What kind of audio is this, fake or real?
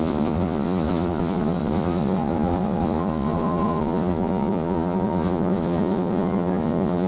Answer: fake